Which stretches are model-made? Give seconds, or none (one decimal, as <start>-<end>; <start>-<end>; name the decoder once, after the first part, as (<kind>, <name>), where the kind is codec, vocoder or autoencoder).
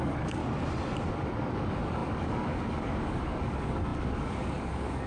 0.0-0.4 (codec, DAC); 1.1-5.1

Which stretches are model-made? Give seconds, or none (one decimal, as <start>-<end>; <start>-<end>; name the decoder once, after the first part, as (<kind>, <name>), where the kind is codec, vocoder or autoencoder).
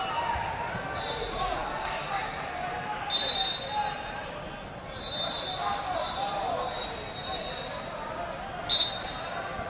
none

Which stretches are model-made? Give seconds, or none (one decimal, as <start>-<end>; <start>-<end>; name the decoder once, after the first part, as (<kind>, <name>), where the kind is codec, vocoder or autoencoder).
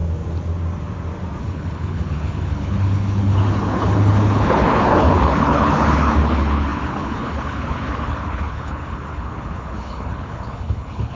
1.4-11.1 (codec, HILCodec)